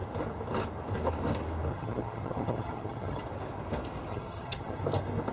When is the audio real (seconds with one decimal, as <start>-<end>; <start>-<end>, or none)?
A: 0.0-1.7; 3.2-4.1; 4.8-5.3